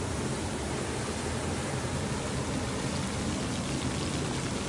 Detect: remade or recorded recorded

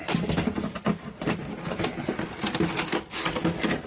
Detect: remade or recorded recorded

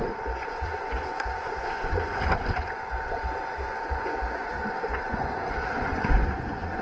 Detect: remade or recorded remade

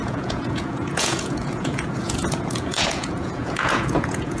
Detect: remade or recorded remade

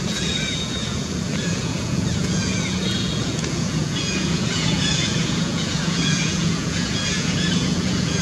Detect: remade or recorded remade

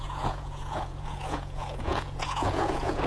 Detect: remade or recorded remade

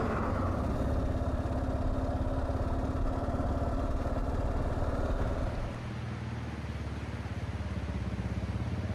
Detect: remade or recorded recorded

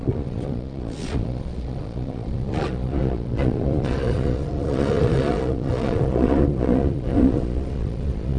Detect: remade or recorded remade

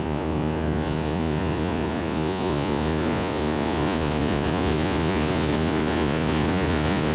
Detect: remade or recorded remade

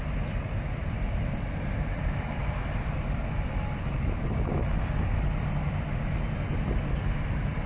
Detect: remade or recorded recorded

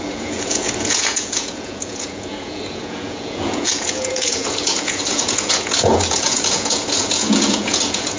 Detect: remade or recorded remade